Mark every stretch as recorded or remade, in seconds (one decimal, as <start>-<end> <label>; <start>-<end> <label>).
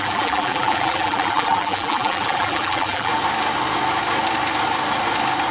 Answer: 0.0-3.1 remade; 3.1-5.5 recorded